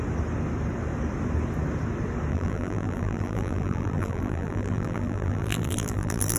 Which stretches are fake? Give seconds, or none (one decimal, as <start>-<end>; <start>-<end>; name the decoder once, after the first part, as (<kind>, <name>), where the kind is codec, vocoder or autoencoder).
2.3-6.4 (vocoder, BigVGAN v2)